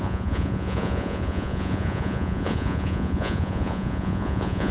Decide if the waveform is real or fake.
fake